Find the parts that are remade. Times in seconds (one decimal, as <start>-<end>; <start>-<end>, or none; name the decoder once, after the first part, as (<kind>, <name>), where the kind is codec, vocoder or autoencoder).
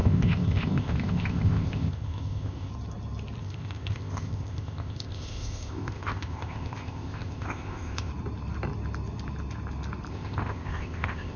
0.0-2.7 (codec, ZipCodec); 3.4-8.1; 10.1-11.4